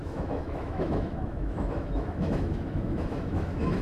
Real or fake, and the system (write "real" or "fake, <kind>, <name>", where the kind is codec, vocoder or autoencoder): fake, autoencoder, DAC-VAE